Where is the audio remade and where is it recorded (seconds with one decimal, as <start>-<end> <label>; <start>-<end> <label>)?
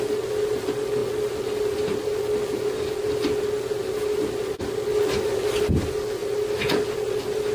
0.0-6.2 recorded; 6.2-7.5 remade